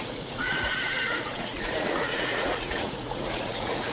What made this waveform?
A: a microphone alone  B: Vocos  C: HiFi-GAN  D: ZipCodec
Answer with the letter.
B